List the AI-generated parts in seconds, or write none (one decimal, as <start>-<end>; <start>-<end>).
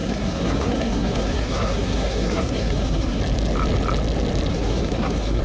0.0-3.2; 4.5-5.4